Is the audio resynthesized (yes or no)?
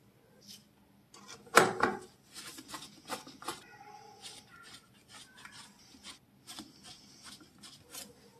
no